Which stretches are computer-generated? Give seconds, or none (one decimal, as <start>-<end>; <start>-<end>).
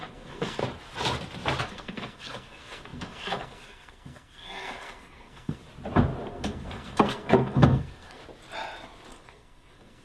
0.0-0.6; 1.6-5.6; 6.3-8.2; 9.1-10.0